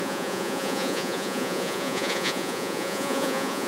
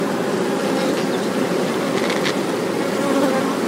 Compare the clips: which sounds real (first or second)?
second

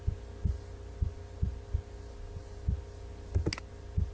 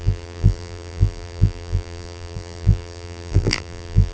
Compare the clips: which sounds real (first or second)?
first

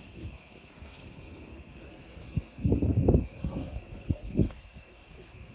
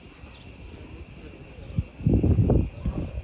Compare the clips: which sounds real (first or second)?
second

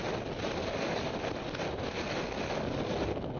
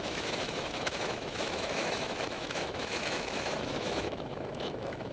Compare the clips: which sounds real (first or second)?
first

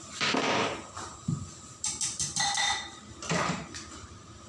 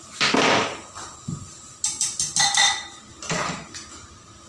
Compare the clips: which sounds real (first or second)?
second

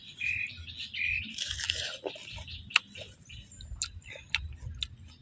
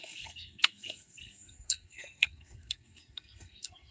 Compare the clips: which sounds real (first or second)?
first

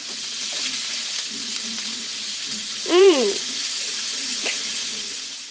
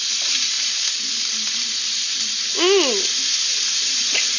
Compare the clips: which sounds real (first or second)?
second